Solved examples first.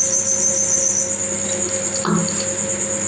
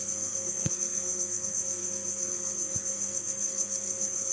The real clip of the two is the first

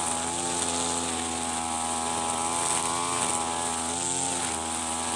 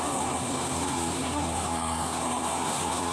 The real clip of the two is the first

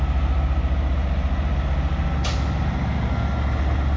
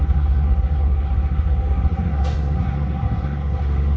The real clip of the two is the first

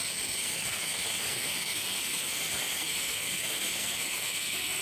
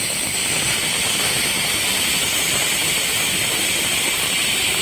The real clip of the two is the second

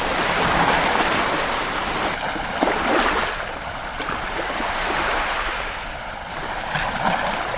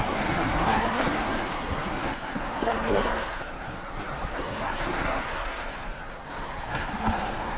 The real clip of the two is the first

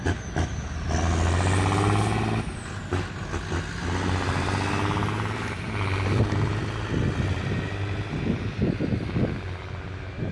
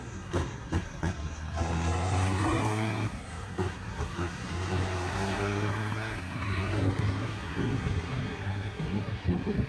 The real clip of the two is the first